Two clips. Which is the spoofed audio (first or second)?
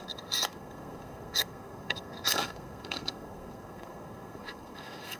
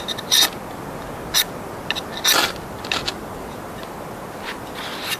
first